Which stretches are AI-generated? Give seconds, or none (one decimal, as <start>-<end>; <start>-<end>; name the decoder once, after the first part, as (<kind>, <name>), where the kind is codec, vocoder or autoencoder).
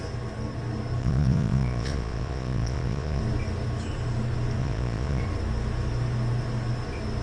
1.0-3.2 (vocoder, Vocos); 4.6-5.2